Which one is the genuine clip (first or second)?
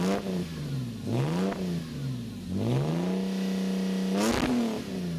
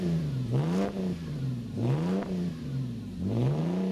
first